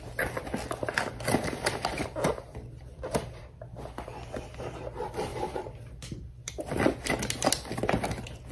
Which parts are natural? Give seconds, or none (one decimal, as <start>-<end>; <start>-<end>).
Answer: 0.0-5.3; 6.5-8.5